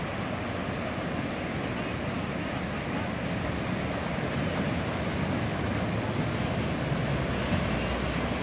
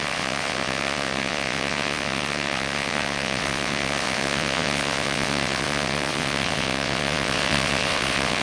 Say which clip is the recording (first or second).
first